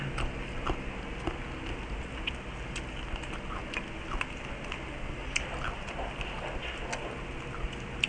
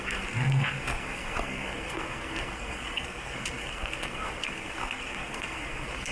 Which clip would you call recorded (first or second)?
first